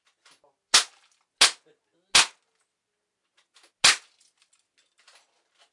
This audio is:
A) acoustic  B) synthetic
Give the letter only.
A